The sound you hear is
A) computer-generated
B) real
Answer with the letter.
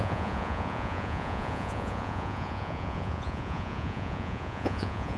A